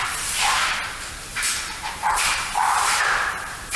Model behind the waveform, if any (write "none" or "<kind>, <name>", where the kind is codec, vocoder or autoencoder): vocoder, BigVGAN v2